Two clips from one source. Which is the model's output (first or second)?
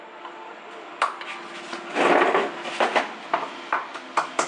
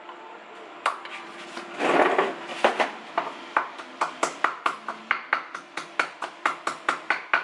second